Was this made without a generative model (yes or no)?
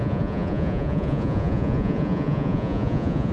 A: no